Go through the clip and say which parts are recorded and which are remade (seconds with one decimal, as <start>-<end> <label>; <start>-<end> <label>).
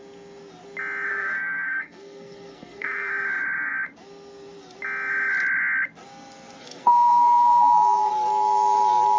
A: 0.0-1.1 recorded; 1.1-3.1 remade; 3.1-6.6 recorded; 6.6-8.1 remade; 8.1-9.2 recorded